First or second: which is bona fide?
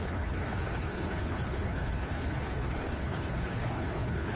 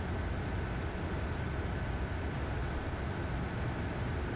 second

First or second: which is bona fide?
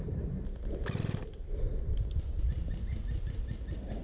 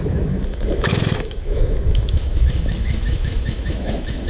first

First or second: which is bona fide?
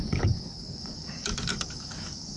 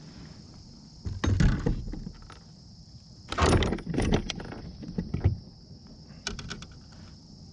second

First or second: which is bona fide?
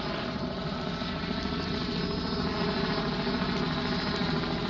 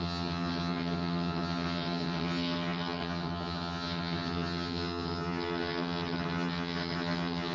first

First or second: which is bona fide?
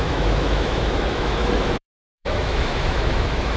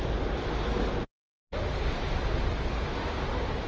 second